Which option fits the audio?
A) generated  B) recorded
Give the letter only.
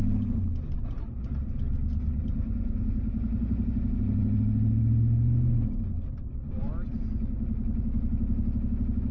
B